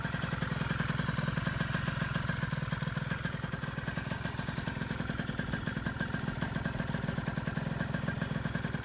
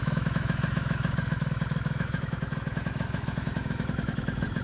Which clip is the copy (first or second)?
second